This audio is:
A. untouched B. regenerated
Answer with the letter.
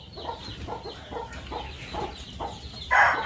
A